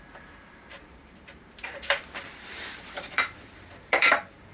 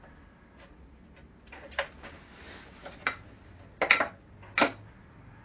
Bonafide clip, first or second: second